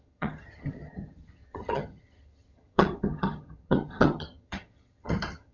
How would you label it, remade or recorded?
remade